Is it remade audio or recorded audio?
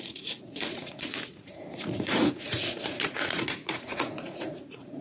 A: remade